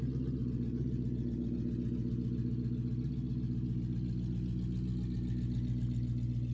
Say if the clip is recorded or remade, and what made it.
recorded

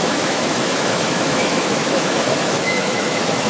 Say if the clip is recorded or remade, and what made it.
remade, autoencoder, DAC-VAE